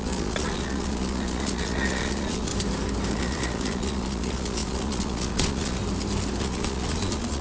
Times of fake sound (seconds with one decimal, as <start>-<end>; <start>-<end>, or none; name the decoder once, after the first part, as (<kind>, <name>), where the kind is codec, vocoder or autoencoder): 0.0-2.5 (vocoder, Vocos); 3.1-5.8; 6.4-7.4